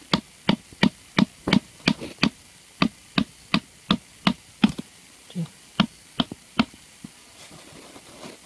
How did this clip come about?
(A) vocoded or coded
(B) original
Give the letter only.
B